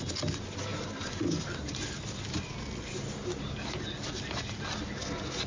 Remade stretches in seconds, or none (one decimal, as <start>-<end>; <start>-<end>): 0.7-2.7